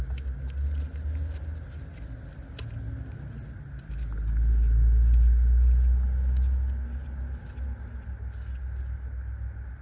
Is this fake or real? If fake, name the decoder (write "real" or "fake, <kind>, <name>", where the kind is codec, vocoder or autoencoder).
real